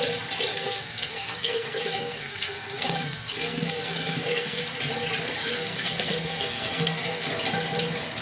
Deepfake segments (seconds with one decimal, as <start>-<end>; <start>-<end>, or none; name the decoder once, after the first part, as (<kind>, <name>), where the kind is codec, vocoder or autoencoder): 0.5-4.6 (codec, SNAC); 5.4-7.3